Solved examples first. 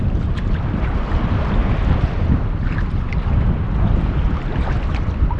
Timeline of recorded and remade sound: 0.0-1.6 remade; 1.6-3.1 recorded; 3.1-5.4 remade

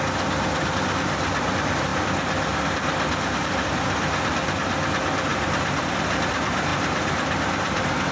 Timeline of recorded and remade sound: 0.0-5.3 recorded; 5.3-5.9 remade; 5.9-6.7 recorded; 6.7-8.1 remade

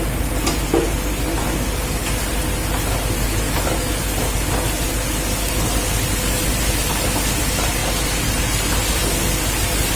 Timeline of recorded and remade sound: 0.0-10.0 recorded

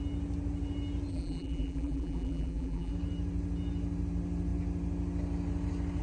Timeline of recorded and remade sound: 0.0-1.1 recorded; 1.1-2.9 remade; 2.9-6.0 recorded

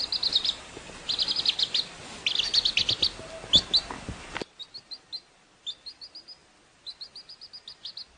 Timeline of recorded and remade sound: 0.0-8.2 recorded

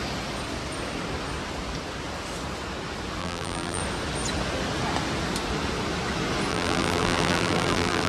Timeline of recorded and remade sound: 0.0-3.2 recorded; 3.2-3.8 remade; 3.8-6.5 recorded; 6.5-8.1 remade